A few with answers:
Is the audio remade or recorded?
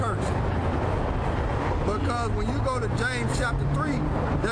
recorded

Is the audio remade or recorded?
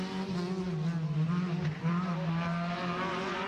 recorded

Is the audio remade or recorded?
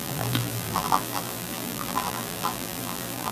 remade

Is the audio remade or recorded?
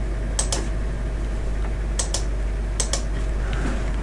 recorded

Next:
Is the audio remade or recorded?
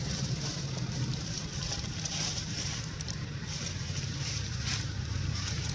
remade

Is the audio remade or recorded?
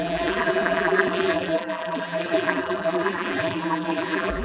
remade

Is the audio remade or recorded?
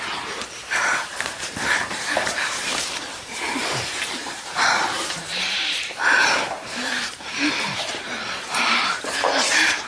remade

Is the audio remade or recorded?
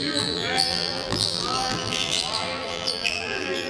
remade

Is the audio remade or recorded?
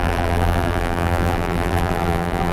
remade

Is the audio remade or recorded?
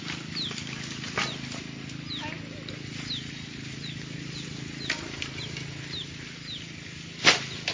recorded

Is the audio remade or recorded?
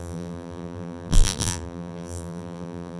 remade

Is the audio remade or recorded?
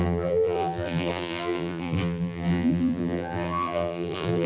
remade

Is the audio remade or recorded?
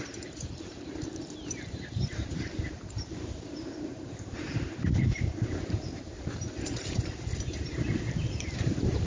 remade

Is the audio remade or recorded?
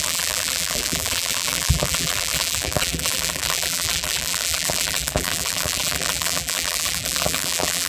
remade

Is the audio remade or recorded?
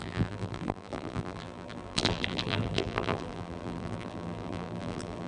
remade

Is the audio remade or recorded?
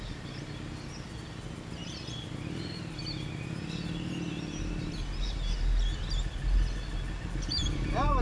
recorded